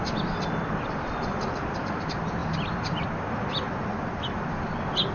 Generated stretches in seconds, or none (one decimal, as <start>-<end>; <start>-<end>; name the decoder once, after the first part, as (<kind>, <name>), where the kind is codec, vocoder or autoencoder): 0.0-2.4 (vocoder, BigVGAN v2); 3.3-5.1